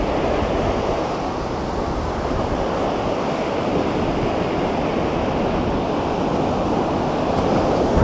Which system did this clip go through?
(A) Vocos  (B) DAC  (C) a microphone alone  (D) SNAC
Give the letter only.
C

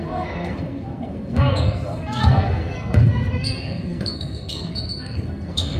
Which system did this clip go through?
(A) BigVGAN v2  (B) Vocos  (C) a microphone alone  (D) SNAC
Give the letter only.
D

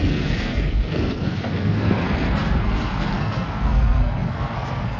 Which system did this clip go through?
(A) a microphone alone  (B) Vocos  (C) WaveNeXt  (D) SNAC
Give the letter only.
D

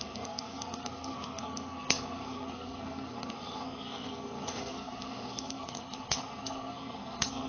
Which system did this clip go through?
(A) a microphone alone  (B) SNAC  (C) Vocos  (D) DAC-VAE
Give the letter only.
B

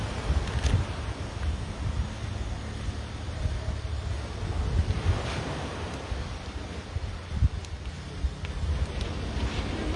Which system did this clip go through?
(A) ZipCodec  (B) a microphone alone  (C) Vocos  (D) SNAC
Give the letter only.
B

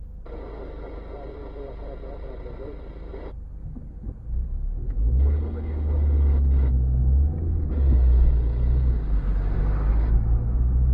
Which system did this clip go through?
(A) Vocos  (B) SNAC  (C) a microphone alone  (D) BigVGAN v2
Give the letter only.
C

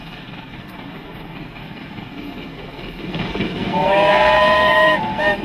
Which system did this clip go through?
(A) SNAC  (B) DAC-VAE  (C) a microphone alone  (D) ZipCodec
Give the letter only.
A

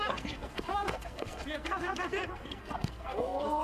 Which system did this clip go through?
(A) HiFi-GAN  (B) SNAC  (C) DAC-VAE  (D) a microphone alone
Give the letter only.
B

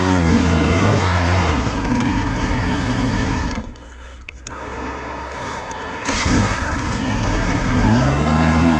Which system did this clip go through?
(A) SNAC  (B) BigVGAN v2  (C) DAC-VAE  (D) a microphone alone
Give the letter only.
A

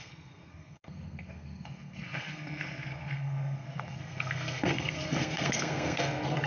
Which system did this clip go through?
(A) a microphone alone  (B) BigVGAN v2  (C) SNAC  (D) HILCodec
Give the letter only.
C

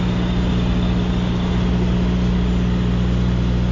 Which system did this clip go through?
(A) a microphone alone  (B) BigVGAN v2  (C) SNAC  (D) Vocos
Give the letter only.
A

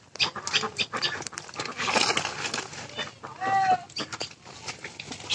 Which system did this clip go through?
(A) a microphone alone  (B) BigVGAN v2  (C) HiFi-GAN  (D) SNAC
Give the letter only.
A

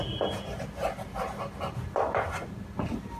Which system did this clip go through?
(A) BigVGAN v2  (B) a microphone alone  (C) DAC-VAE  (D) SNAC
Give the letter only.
B